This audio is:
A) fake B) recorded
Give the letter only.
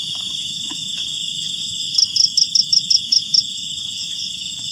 A